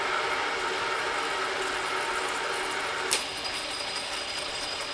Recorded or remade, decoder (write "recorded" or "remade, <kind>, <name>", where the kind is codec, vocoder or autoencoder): recorded